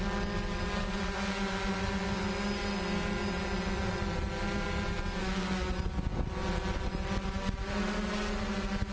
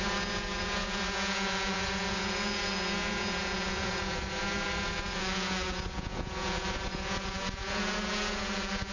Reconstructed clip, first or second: second